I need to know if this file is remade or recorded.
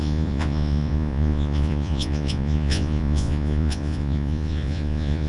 remade